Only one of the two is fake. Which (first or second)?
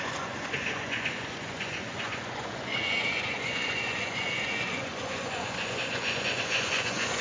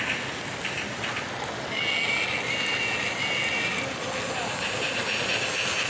first